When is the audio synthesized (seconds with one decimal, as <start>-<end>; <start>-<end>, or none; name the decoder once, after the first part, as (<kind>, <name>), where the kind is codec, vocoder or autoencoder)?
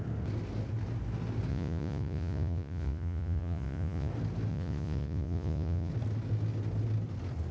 1.5-4.1 (vocoder, Vocos); 4.5-5.9